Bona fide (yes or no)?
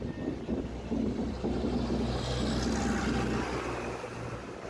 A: yes